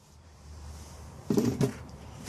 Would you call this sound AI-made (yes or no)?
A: yes